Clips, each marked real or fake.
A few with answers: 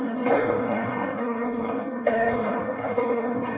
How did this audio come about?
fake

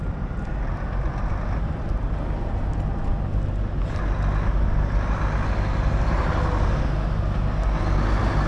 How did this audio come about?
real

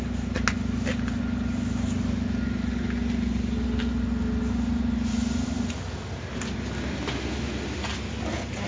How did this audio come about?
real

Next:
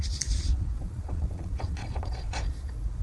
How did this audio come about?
fake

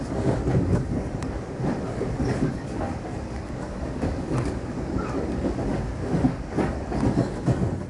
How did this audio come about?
fake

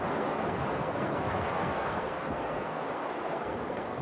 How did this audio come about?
fake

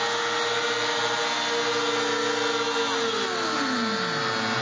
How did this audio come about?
real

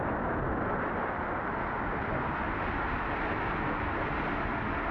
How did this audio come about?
real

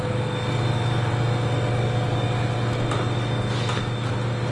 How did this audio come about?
real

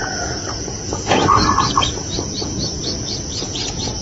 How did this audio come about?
fake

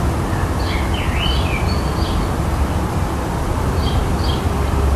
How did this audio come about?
real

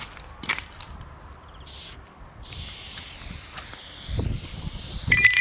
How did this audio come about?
real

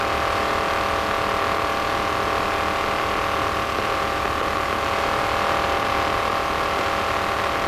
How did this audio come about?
real